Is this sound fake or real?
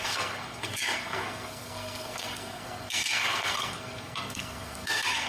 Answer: fake